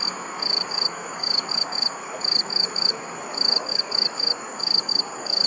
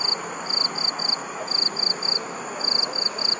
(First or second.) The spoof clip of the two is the first